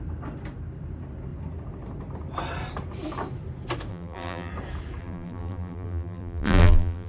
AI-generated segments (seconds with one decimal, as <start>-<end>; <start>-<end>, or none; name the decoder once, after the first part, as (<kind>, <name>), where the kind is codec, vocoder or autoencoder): 3.9-4.5 (vocoder, BigVGAN v2); 5.0-7.1